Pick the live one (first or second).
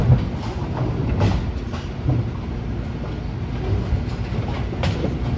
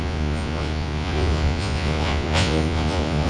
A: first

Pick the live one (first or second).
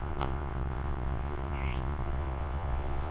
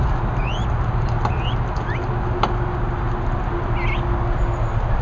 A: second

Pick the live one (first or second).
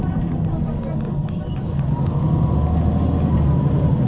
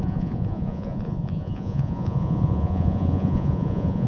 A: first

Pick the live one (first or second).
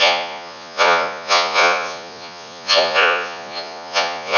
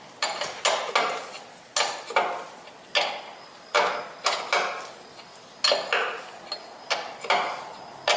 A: second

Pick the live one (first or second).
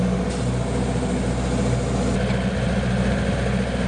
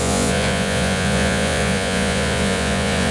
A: first